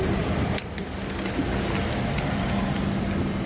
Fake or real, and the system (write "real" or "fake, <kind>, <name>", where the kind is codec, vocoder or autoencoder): real